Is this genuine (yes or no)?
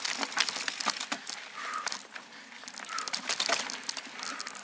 yes